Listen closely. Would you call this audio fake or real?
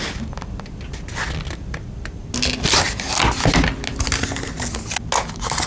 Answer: real